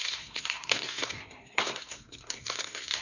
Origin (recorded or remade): remade